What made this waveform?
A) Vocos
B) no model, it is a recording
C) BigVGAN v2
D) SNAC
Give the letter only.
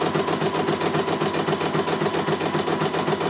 B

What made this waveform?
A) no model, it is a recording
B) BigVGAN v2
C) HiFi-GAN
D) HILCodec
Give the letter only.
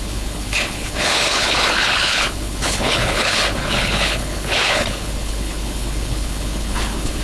D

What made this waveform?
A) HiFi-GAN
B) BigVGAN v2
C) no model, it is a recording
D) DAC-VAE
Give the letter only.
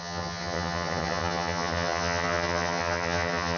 A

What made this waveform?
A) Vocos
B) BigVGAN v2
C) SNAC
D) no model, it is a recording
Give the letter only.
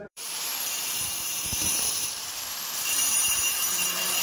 B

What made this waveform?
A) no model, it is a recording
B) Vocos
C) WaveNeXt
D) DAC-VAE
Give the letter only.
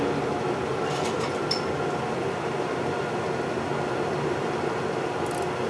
A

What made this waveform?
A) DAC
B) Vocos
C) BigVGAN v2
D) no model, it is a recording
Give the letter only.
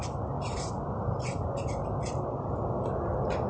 D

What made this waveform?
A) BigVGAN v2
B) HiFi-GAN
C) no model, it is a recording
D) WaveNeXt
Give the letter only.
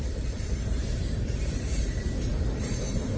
A